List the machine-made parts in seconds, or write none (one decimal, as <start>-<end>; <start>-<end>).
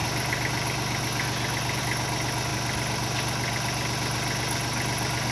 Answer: none